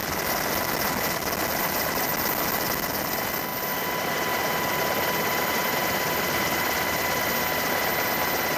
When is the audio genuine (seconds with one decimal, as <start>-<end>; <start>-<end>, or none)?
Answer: 0.5-1.5; 2.1-3.5; 7.3-8.6